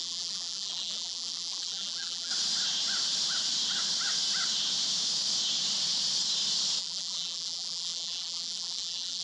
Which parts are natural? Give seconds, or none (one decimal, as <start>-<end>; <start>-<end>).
2.3-6.8